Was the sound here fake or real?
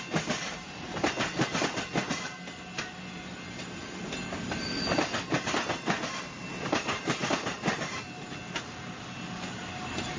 real